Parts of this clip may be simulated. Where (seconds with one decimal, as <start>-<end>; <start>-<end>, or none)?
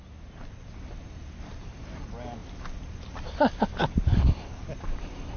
none